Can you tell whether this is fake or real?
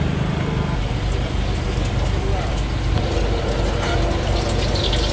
real